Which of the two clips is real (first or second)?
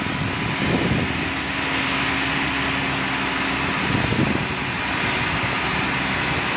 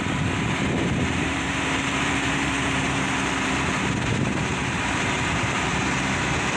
first